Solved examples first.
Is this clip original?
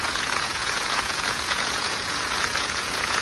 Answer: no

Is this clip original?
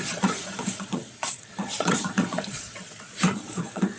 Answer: no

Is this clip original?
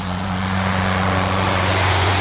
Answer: no